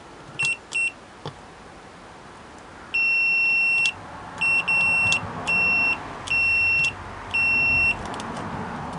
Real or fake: real